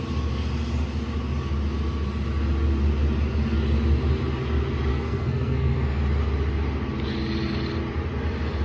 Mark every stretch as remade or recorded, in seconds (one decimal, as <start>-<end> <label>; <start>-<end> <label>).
0.0-4.9 recorded; 4.9-6.0 remade; 6.0-8.6 recorded